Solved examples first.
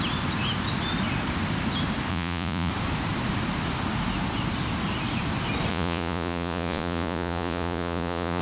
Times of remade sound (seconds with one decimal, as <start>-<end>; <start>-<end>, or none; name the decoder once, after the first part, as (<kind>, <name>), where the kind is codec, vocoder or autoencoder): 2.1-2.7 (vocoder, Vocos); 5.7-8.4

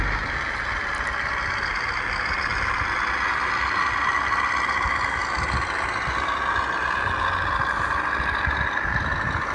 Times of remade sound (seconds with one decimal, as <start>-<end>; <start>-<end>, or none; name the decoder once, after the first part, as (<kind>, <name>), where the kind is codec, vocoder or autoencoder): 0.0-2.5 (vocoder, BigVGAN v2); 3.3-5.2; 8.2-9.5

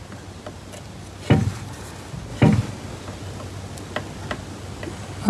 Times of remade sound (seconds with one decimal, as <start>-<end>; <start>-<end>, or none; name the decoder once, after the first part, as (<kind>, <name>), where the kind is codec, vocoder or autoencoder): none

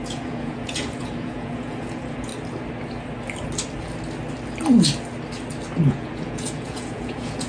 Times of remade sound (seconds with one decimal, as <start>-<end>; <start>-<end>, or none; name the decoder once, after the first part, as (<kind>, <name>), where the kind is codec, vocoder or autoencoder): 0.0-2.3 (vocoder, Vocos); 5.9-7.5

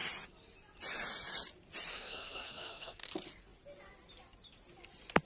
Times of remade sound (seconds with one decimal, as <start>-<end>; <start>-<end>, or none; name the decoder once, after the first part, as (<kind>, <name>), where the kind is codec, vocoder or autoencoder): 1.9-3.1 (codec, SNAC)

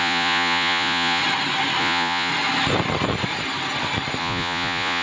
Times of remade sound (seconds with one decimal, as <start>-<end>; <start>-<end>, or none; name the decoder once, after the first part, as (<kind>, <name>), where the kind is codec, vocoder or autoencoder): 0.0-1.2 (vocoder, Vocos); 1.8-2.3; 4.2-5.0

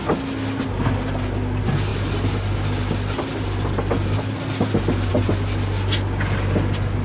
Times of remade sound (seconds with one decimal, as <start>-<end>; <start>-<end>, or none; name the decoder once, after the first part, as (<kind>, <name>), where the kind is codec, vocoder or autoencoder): none